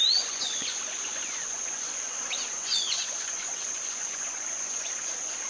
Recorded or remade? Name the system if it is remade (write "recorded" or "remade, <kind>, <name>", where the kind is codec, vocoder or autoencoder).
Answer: remade, vocoder, Vocos